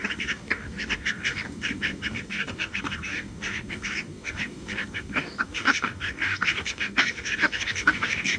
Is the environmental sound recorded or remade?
remade